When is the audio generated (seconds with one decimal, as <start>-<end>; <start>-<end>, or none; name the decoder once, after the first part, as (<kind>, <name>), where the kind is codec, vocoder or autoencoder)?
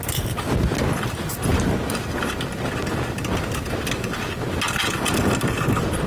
none